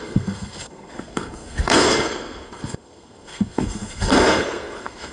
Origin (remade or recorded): remade